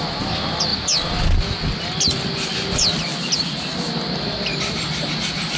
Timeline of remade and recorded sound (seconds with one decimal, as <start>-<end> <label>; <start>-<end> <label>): 0.0-5.6 recorded